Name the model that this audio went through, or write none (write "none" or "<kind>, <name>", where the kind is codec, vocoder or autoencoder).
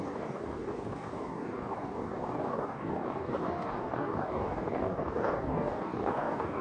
codec, DAC